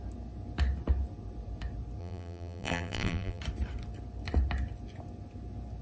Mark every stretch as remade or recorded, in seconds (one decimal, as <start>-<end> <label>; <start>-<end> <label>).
0.0-2.0 recorded; 2.0-3.4 remade; 3.4-5.8 recorded